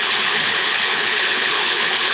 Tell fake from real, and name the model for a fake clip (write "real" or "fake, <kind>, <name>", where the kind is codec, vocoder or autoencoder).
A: fake, codec, HILCodec